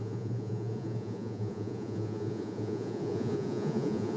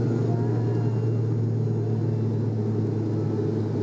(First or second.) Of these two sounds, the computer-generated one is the first